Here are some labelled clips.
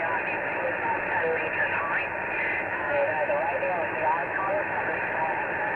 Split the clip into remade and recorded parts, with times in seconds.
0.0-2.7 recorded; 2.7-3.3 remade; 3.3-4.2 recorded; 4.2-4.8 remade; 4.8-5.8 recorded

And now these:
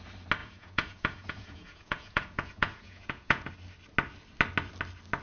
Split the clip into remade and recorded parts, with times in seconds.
0.0-0.4 recorded; 0.4-3.5 remade; 3.5-5.2 recorded

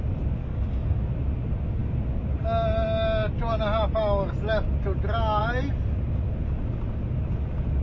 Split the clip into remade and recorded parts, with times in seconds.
0.0-0.4 recorded; 0.4-1.0 remade; 1.0-7.8 recorded

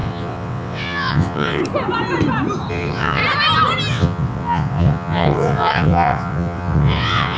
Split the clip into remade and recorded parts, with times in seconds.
0.0-1.6 remade; 1.6-2.7 recorded; 2.7-3.2 remade; 3.2-3.9 recorded; 3.9-7.4 remade

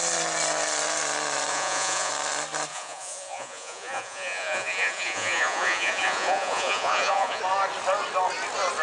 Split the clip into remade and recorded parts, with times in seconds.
0.0-1.5 recorded; 1.5-2.1 remade; 2.1-2.7 recorded; 2.7-7.4 remade; 7.4-8.8 recorded

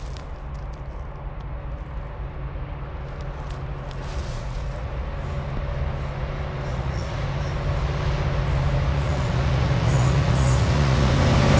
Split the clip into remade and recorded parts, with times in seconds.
0.0-4.2 recorded; 4.2-4.9 remade; 4.9-6.7 recorded; 6.7-7.2 remade; 7.2-8.9 recorded; 8.9-11.1 remade; 11.1-11.6 recorded

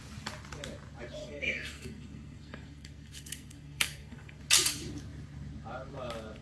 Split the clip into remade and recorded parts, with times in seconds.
0.0-1.2 recorded; 1.2-4.4 remade; 4.4-6.4 recorded